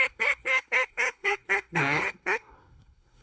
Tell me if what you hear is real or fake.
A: fake